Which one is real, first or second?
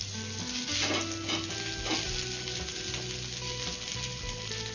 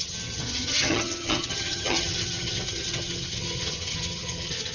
first